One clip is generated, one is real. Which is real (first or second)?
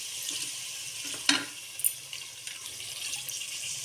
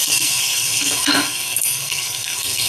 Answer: first